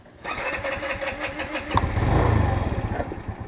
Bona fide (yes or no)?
yes